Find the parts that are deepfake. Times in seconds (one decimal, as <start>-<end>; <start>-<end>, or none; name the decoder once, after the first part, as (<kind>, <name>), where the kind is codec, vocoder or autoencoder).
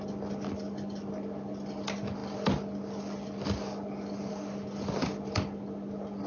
none